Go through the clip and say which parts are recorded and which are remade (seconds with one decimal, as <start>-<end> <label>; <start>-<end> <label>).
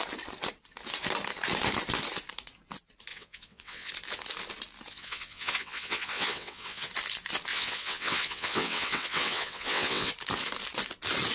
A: 0.0-3.1 recorded; 3.1-3.9 remade; 3.9-4.9 recorded; 4.9-6.9 remade; 6.9-7.5 recorded; 7.5-10.1 remade; 10.1-11.3 recorded